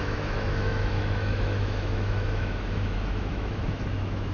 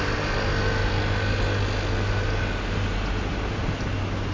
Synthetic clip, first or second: first